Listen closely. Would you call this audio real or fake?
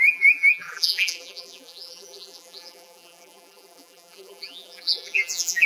fake